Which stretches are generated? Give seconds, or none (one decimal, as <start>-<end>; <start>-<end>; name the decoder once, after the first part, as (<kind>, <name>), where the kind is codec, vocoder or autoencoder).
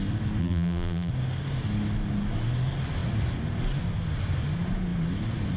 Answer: 0.4-1.1 (vocoder, BigVGAN v2)